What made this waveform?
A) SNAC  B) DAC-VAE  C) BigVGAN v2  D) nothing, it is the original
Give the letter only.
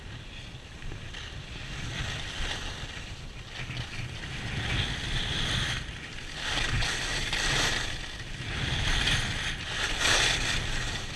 D